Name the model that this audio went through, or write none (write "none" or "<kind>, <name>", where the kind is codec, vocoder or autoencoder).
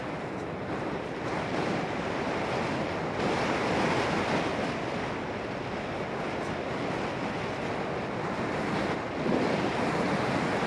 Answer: none